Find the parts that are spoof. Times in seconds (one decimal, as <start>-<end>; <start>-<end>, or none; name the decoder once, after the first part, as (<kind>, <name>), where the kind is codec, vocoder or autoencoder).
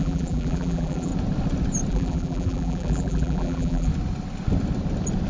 0.0-1.1 (vocoder, BigVGAN v2); 1.9-3.9